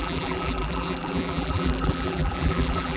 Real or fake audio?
fake